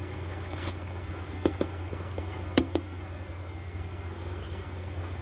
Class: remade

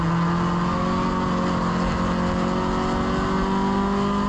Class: recorded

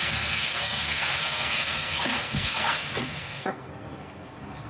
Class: remade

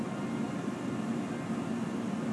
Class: recorded